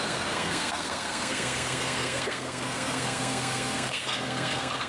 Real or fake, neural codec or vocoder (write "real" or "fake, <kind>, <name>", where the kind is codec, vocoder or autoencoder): fake, codec, SNAC